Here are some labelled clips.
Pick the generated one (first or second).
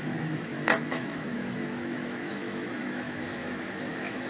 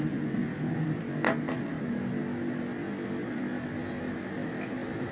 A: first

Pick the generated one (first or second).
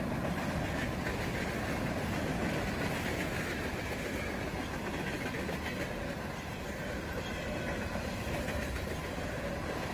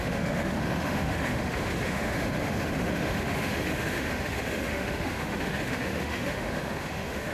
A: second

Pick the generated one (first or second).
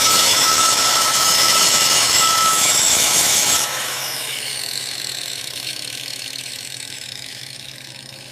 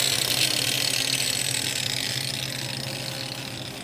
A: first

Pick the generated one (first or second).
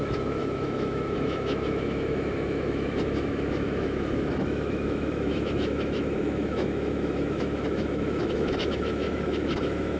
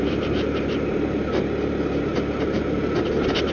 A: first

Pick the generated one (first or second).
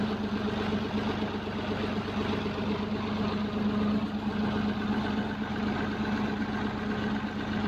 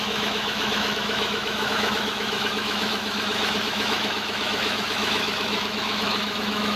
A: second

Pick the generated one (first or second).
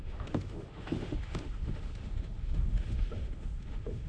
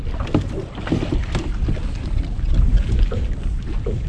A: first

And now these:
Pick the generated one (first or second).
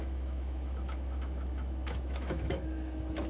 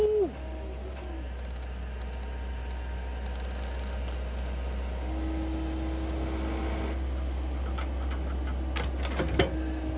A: first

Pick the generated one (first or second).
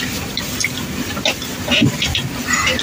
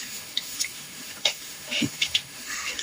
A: second